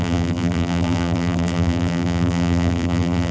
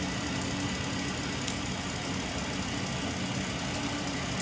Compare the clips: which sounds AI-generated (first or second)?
first